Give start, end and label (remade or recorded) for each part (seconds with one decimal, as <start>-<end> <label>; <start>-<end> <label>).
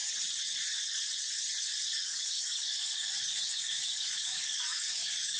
0.0-2.0 recorded; 2.0-5.4 remade